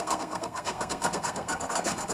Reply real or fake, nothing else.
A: fake